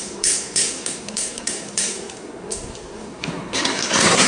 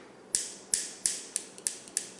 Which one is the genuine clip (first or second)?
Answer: second